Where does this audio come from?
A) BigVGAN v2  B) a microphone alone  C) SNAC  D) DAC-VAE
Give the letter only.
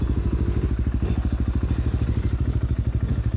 B